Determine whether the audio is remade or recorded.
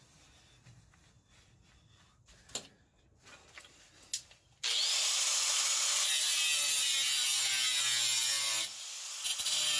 recorded